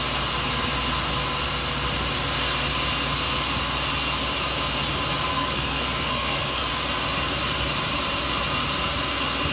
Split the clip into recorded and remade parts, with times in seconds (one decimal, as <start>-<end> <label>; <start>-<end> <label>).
0.0-5.3 recorded; 5.3-6.7 remade; 6.7-9.5 recorded